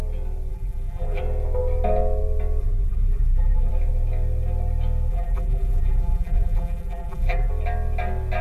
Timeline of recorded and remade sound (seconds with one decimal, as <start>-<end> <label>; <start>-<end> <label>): 0.0-0.5 recorded; 0.5-1.2 remade; 1.2-2.6 recorded; 2.6-3.7 remade; 3.7-5.1 recorded; 5.1-7.5 remade; 7.5-8.4 recorded